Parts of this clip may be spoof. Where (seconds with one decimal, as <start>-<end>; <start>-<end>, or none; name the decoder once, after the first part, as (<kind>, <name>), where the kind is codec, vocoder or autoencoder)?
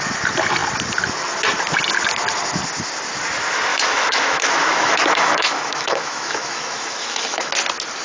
3.7-7.5 (autoencoder, DAC-VAE)